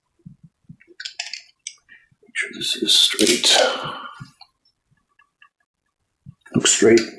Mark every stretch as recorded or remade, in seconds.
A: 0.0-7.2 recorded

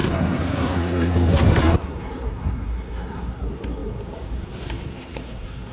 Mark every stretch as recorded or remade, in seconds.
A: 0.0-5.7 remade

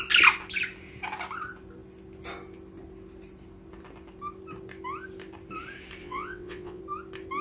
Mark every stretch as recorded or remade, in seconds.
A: 0.0-6.0 recorded; 6.0-6.8 remade; 6.8-7.4 recorded

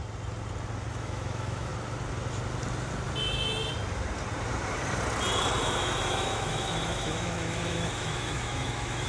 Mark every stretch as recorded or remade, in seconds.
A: 0.0-0.9 recorded; 0.9-1.7 remade; 1.7-5.6 recorded; 5.6-9.1 remade

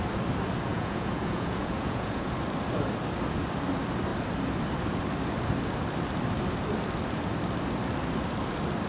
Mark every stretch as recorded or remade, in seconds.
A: 0.0-0.7 recorded; 0.7-2.3 remade; 2.3-8.9 recorded